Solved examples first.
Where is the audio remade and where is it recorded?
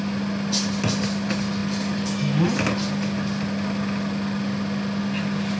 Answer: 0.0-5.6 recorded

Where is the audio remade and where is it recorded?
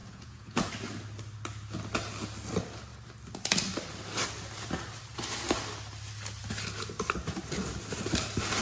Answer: 0.0-0.7 remade; 0.7-8.6 recorded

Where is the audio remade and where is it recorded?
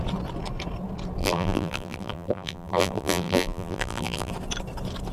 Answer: 0.0-1.2 recorded; 1.2-4.3 remade; 4.3-5.1 recorded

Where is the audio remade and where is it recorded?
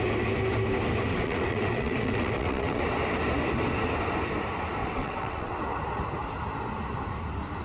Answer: 0.0-1.1 recorded; 1.1-2.8 remade; 2.8-4.8 recorded; 4.8-5.6 remade; 5.6-7.6 recorded